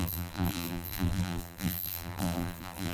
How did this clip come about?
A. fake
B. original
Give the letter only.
A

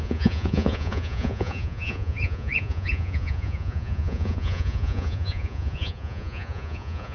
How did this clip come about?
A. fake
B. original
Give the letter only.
A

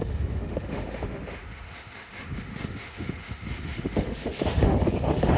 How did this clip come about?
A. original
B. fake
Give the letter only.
B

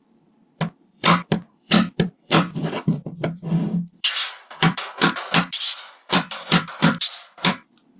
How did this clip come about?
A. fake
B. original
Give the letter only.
A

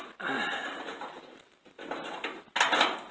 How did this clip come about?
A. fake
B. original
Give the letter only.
B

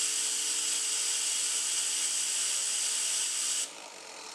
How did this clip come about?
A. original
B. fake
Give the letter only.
A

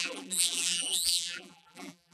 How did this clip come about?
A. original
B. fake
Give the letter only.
B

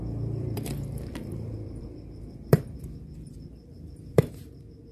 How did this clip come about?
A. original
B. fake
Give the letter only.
B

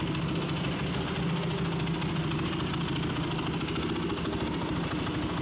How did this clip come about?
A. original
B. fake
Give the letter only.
A